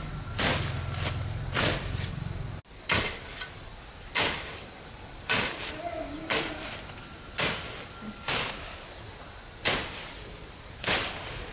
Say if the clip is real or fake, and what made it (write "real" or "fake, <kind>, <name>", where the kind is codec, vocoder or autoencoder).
real